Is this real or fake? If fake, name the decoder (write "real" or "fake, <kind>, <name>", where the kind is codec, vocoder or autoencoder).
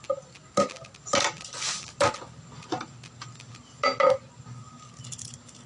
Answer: real